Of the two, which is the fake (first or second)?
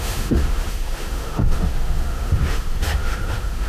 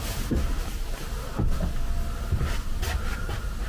first